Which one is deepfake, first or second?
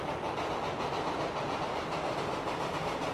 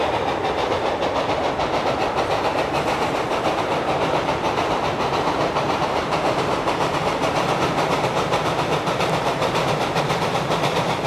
second